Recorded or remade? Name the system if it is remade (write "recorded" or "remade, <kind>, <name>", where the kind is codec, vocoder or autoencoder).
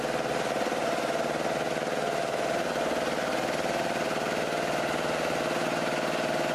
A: recorded